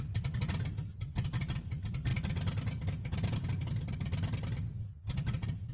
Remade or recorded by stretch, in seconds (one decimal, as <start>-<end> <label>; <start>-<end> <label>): 0.0-5.7 recorded